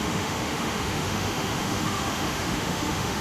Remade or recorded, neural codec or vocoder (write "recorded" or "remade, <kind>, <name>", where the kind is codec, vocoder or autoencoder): remade, autoencoder, DAC-VAE